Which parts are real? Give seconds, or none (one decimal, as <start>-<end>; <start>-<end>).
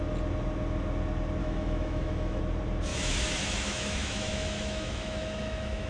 0.0-1.4; 2.4-2.9